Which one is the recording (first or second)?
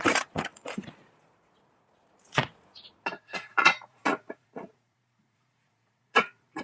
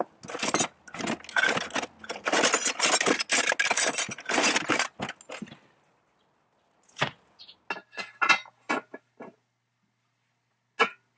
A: second